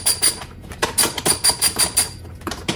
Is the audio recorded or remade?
remade